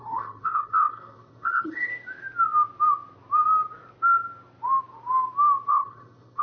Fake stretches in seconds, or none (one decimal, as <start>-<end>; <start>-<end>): 0.0-1.9; 5.7-6.4